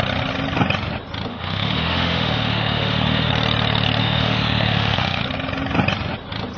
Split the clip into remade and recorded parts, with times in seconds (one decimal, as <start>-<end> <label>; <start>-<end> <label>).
0.0-1.3 recorded; 1.3-3.3 remade; 3.3-4.0 recorded; 4.0-5.2 remade; 5.2-6.6 recorded